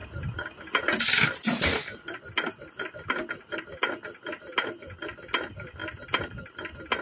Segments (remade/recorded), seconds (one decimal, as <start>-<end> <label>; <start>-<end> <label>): 0.0-7.0 recorded